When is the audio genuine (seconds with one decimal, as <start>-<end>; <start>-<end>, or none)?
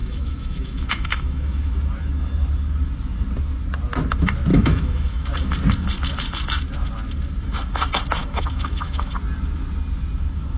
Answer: 1.7-4.5; 5.3-8.2; 9.1-10.6